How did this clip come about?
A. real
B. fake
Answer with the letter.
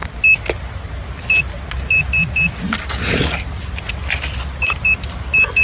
A